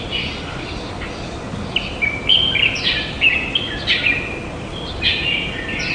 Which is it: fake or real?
real